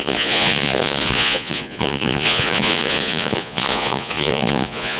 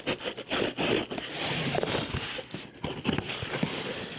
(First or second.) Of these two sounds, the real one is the second